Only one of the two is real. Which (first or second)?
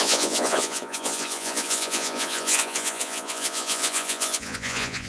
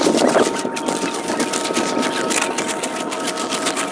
second